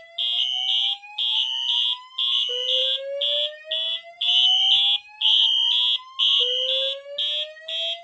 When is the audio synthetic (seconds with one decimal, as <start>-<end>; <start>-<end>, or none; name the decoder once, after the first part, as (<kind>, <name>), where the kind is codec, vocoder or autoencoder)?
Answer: none